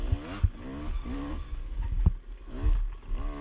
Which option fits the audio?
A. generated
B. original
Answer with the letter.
B